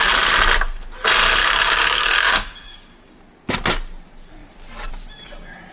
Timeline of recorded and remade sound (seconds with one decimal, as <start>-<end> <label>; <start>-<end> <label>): 0.0-1.4 recorded; 1.4-3.2 remade; 3.2-5.7 recorded